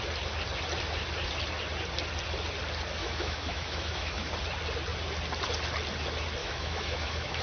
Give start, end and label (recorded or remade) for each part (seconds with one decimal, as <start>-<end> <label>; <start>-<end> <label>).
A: 0.0-3.0 recorded; 3.0-4.3 remade; 4.3-6.4 recorded; 6.4-7.4 remade